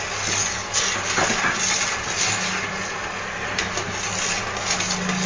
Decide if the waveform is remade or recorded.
recorded